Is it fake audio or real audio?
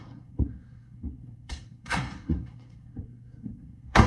fake